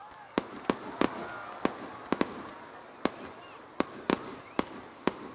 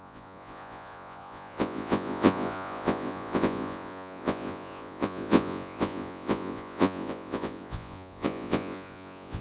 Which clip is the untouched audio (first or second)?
first